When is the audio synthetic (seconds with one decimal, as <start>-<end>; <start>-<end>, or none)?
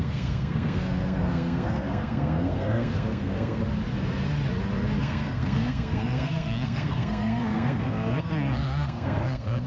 0.0-3.6; 5.0-9.7